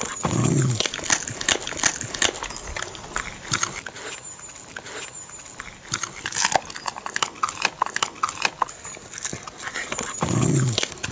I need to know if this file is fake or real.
real